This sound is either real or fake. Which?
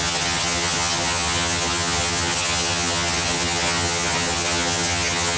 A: fake